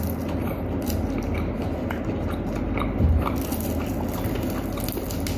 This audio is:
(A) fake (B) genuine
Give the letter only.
B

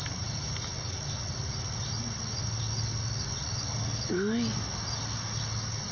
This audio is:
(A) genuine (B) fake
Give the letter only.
A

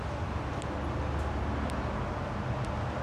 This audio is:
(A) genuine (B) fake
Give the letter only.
A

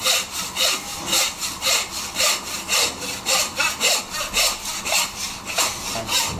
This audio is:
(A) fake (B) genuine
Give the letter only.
B